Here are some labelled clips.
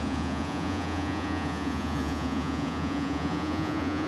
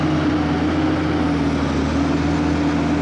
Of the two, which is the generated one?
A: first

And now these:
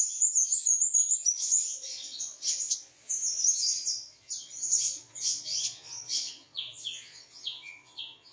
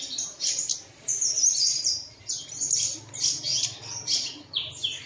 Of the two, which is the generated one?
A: first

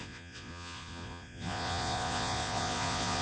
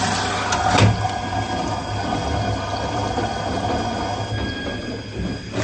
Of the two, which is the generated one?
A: first